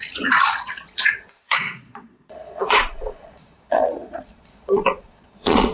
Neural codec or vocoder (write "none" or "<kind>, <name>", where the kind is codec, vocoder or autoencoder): vocoder, Vocos